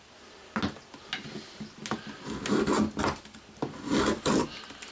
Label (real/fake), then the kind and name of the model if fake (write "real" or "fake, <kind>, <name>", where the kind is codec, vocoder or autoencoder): real